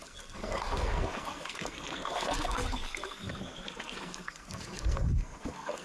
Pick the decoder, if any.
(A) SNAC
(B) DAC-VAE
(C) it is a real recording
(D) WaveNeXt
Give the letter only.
A